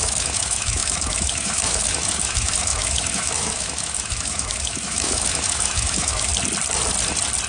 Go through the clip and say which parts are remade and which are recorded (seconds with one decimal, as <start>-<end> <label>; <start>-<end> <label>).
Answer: 0.0-6.3 remade; 6.3-7.5 recorded